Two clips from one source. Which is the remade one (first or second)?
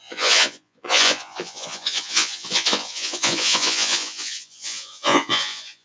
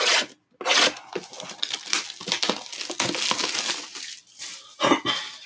first